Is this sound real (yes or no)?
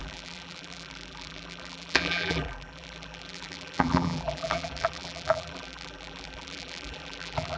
no